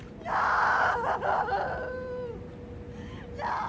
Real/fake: real